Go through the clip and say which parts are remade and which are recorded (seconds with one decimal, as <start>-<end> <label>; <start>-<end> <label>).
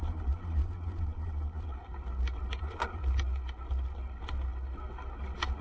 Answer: 0.0-1.8 remade; 1.8-2.6 recorded; 2.6-3.0 remade; 3.0-5.6 recorded